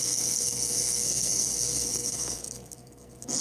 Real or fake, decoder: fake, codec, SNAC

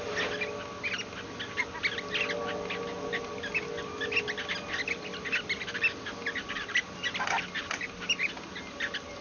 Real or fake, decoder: real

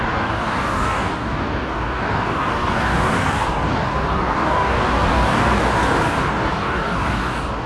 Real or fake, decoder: fake, codec, DAC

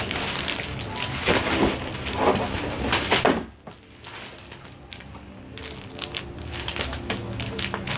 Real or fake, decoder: real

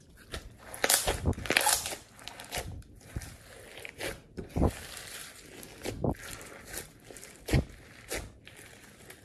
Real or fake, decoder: real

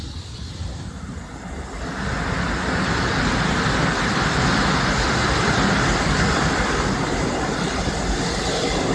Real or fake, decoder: real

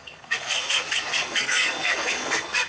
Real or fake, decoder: fake, codec, SNAC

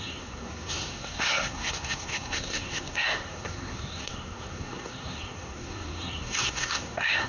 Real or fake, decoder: fake, codec, SNAC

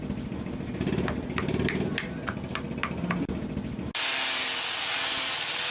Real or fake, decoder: real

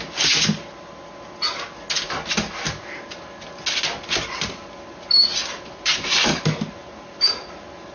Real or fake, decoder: real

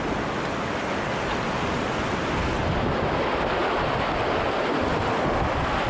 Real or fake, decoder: real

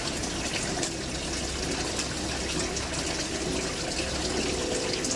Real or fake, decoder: real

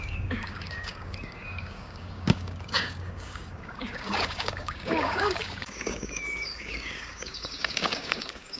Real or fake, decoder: fake, codec, DAC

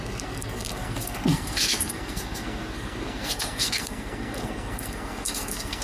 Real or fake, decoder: fake, codec, SNAC